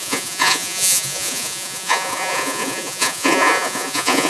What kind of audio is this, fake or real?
fake